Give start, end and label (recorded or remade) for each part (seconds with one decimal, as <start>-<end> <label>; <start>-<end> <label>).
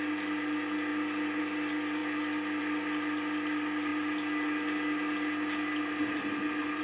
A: 0.0-6.8 recorded